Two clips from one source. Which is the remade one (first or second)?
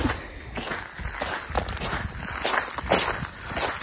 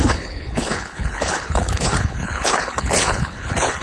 second